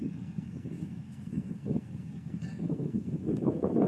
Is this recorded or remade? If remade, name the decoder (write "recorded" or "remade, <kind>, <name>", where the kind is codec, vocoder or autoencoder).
remade, codec, SNAC